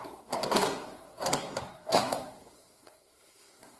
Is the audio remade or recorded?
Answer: remade